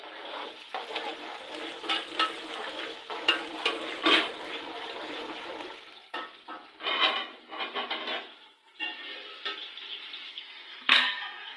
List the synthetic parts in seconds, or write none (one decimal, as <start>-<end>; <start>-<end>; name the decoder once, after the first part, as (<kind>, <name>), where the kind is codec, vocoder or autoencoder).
10.3-11.6 (codec, SNAC)